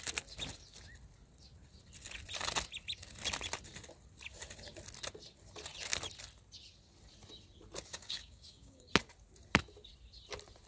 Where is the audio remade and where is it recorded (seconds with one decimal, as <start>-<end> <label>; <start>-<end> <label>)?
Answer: 0.0-7.9 recorded; 7.9-8.9 remade; 8.9-10.7 recorded